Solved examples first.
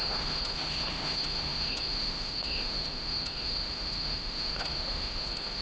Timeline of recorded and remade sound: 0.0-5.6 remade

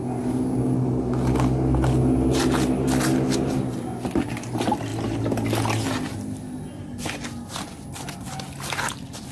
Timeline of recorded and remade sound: 0.0-9.3 recorded